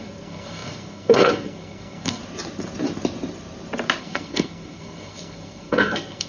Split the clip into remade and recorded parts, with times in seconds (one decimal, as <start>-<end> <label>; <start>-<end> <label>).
0.0-2.2 remade; 2.2-4.0 recorded; 4.0-6.3 remade